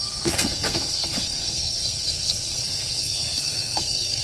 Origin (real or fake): fake